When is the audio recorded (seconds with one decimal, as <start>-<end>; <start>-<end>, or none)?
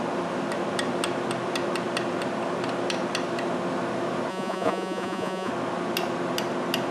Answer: 0.0-4.3; 5.5-6.9